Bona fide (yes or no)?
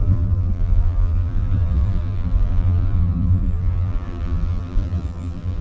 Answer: no